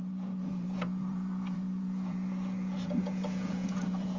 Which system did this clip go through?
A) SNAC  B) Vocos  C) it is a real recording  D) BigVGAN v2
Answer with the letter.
B